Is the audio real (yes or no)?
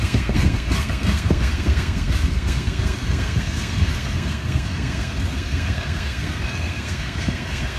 no